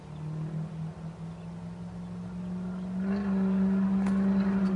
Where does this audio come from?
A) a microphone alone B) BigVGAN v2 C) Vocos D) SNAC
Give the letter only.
A